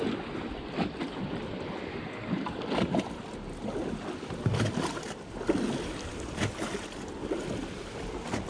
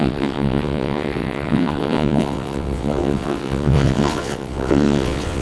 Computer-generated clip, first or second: second